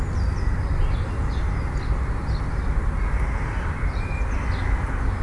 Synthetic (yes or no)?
no